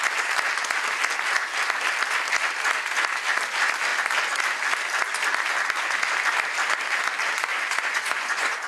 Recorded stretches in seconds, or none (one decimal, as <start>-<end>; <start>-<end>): 0.0-7.5